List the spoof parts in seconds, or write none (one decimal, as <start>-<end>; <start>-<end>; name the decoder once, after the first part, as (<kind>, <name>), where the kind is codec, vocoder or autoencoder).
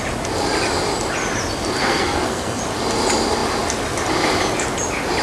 1.8-2.6 (codec, SNAC)